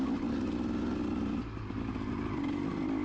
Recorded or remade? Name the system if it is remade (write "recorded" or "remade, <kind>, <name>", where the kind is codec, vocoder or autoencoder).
recorded